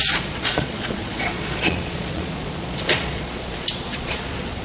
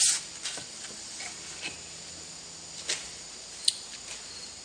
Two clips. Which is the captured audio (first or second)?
second